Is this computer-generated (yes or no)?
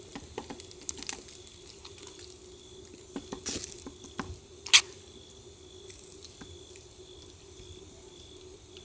no